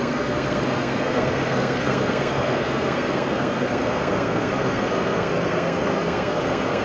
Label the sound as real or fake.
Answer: fake